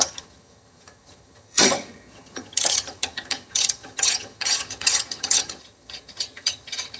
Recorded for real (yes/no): no